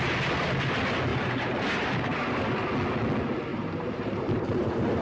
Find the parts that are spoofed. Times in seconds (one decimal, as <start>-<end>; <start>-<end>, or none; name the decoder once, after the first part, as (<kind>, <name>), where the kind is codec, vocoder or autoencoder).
1.1-2.5 (vocoder, BigVGAN v2); 3.5-5.0